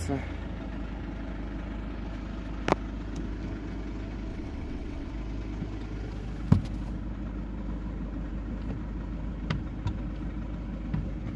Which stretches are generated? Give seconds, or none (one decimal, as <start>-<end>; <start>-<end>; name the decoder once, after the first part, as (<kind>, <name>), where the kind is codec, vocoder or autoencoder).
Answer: 4.3-5.1 (vocoder, WaveNeXt)